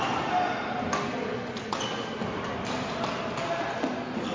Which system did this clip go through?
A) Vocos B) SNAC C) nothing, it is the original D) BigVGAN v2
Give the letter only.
C